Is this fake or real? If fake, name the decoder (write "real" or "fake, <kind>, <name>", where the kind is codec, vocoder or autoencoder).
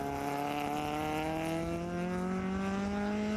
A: real